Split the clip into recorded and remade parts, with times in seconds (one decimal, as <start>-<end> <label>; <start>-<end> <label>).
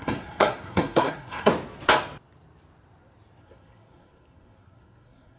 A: 0.0-1.5 remade; 1.5-3.4 recorded; 3.4-5.4 remade